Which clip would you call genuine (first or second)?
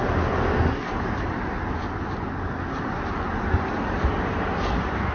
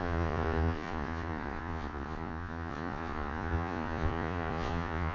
first